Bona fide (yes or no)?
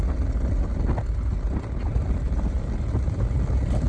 yes